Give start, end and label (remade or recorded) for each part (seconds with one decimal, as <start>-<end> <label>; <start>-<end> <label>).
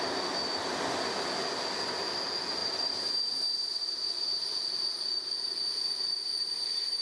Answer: 0.0-2.6 recorded; 2.6-3.5 remade; 3.5-7.0 recorded